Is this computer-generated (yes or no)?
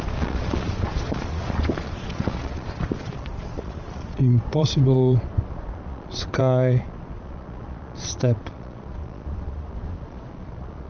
yes